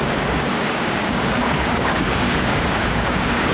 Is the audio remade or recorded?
remade